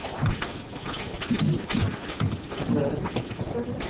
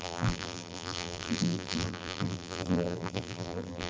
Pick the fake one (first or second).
second